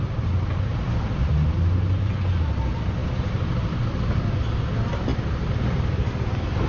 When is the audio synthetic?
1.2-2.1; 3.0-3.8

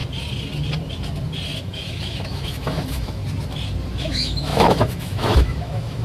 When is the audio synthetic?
1.6-3.2; 4.0-6.0

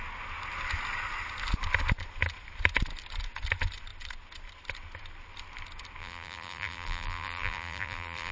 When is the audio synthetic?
6.0-8.3

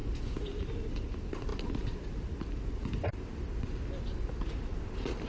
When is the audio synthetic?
none

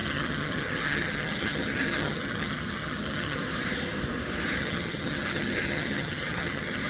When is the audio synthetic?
0.0-3.4; 4.6-6.9

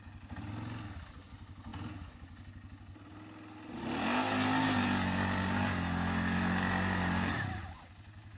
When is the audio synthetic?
none